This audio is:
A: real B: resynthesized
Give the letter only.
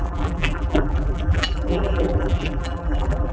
B